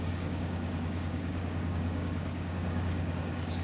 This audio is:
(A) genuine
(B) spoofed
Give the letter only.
B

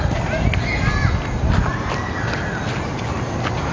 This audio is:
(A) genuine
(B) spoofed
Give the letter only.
A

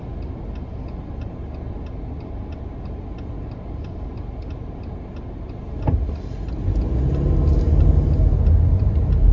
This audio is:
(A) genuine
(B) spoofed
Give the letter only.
A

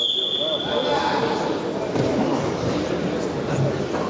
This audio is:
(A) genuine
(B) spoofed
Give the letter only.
A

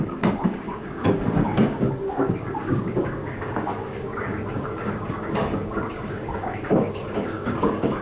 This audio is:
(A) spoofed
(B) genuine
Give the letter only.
A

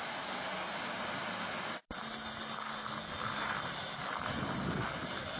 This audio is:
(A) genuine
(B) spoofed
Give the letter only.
A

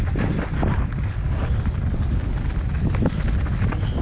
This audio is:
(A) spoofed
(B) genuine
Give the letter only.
B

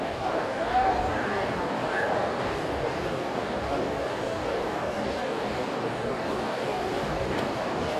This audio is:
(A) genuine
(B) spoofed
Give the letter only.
B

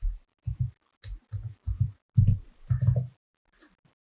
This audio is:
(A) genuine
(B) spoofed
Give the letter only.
A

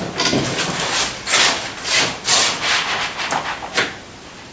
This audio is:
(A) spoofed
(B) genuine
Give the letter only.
B